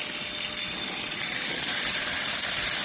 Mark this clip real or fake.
real